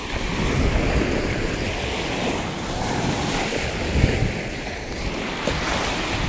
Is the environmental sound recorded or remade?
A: recorded